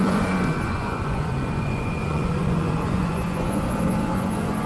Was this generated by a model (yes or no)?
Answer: yes